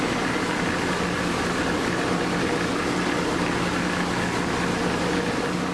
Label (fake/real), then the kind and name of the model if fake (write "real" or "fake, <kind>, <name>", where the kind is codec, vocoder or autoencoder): real